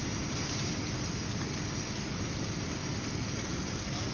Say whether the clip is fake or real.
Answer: real